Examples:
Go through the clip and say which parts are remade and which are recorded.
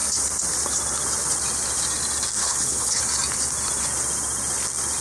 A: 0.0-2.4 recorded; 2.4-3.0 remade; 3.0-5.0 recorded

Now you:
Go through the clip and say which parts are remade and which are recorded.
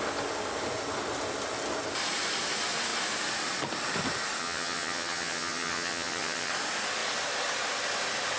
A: 0.0-4.4 recorded; 4.4-6.5 remade; 6.5-8.4 recorded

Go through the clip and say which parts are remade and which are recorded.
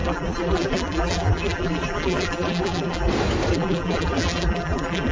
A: 0.0-3.1 remade; 3.1-3.5 recorded; 3.5-5.1 remade